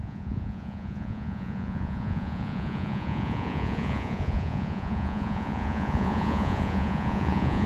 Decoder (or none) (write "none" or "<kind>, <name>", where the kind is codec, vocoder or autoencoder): vocoder, Vocos